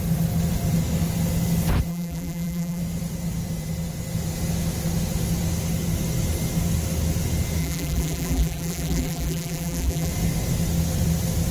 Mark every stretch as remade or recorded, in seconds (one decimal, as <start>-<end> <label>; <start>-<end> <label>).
0.0-1.9 recorded; 1.9-2.8 remade; 2.8-7.6 recorded; 7.6-10.1 remade; 10.1-11.5 recorded